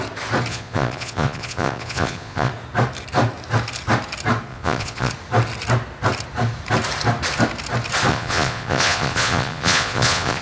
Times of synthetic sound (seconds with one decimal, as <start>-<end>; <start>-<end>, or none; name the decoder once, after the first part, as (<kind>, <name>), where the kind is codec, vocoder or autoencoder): 0.5-2.5 (vocoder, Vocos); 4.5-5.1; 8.1-10.4